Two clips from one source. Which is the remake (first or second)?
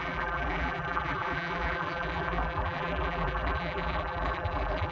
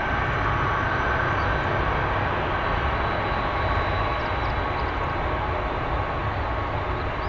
first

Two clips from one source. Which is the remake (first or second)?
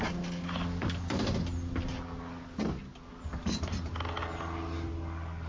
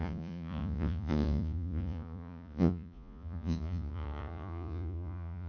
second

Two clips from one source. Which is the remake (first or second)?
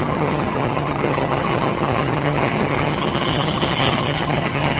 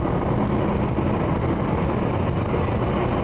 first